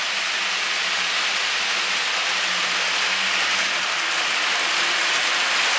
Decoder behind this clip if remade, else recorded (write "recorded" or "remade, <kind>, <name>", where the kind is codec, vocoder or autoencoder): recorded